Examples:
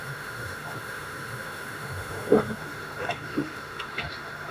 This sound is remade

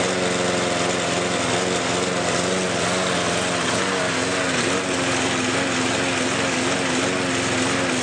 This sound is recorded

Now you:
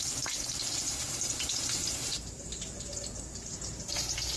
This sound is remade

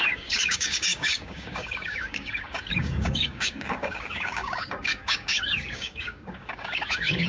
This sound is remade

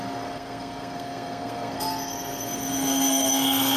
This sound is remade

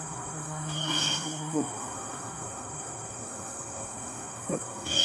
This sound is remade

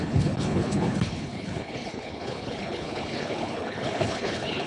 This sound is remade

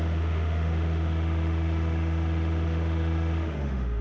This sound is remade